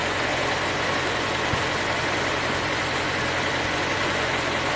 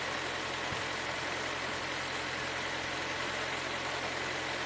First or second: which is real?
second